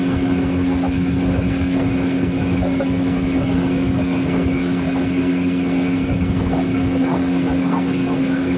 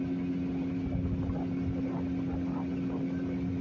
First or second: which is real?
second